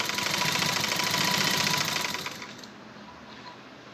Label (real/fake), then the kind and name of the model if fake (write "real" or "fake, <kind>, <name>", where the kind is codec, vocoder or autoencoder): real